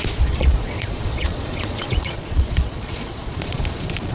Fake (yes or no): yes